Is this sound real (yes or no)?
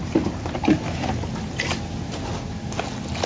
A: yes